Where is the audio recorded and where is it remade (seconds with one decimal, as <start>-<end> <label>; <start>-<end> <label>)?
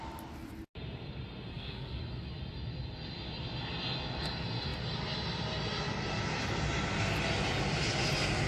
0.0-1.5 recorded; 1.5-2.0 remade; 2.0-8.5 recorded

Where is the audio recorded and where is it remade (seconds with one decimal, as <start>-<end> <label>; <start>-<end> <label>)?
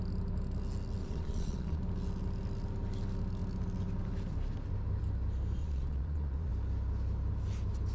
0.0-1.0 recorded; 1.0-1.8 remade; 1.8-5.6 recorded; 5.6-6.5 remade; 6.5-7.9 recorded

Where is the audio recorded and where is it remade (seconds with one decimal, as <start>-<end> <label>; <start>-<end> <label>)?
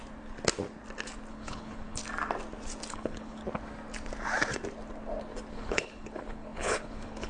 0.0-1.3 recorded; 1.3-2.0 remade; 2.0-2.9 recorded; 2.9-3.4 remade; 3.4-5.5 recorded; 5.5-7.3 remade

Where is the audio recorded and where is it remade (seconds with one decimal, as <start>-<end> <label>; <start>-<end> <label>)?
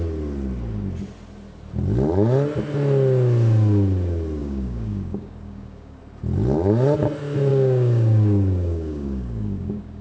0.0-4.4 recorded; 4.4-6.0 remade; 6.0-7.5 recorded; 7.5-10.0 remade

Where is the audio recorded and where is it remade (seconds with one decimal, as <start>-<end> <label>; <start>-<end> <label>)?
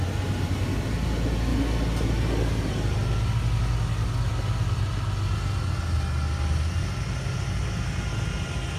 0.0-8.8 recorded